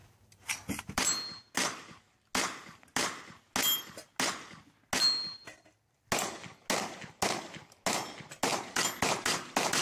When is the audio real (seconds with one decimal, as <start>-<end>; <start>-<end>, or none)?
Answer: 0.0-9.8